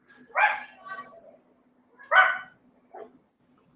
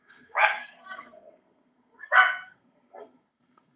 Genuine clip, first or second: first